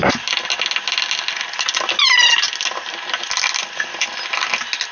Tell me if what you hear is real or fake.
real